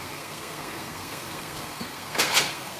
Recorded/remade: remade